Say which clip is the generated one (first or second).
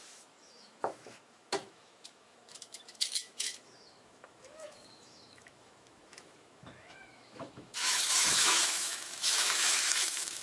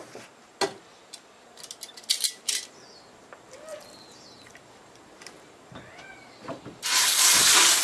first